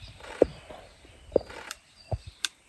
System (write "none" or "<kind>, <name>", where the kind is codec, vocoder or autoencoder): vocoder, BigVGAN v2